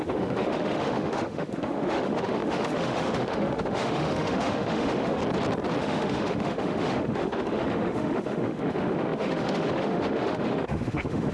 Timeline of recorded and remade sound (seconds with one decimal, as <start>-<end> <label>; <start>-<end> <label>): 0.0-5.2 remade; 5.2-5.8 recorded; 5.8-11.3 remade